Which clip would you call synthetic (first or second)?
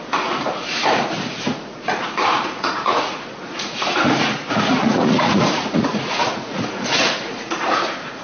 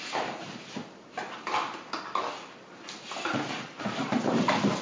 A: first